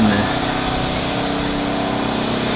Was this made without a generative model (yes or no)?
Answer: yes